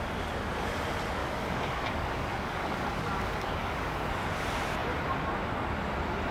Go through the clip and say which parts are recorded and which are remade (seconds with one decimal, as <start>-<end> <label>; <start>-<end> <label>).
0.0-1.2 recorded; 1.2-4.1 remade; 4.1-6.3 recorded